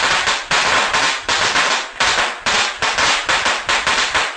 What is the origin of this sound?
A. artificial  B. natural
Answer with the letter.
B